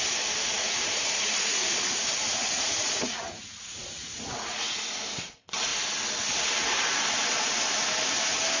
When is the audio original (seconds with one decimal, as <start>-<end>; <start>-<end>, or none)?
0.0-0.4; 4.8-8.6